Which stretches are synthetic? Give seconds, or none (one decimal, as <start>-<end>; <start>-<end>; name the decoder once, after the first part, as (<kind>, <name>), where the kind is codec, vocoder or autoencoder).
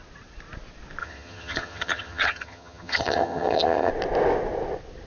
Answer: 1.0-3.9 (vocoder, HiFi-GAN)